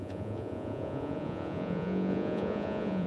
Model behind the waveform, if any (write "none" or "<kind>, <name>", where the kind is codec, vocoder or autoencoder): vocoder, Vocos